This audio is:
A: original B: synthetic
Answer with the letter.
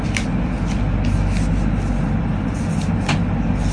A